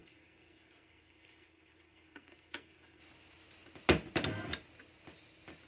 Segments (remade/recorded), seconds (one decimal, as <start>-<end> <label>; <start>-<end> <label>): 0.0-3.0 remade; 3.0-5.7 recorded